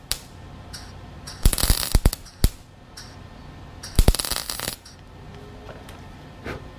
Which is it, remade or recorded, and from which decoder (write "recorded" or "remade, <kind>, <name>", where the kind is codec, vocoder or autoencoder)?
recorded